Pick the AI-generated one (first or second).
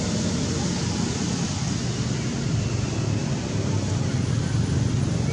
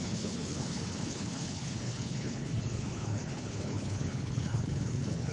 second